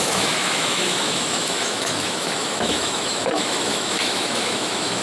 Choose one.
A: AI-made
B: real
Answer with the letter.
A